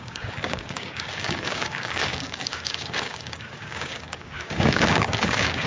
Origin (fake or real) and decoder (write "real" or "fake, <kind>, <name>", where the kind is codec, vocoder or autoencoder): fake, codec, DAC